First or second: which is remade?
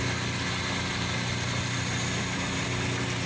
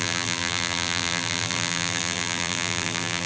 second